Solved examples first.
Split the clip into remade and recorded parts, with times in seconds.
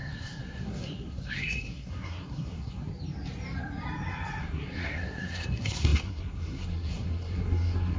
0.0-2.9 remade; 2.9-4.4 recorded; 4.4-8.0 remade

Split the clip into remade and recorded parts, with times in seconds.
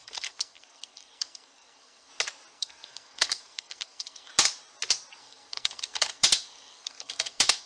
0.0-2.1 remade; 2.1-2.5 recorded; 2.5-4.3 remade; 4.3-5.2 recorded; 5.2-7.7 remade